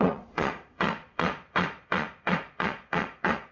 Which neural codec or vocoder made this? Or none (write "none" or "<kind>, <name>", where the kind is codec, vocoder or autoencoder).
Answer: vocoder, Vocos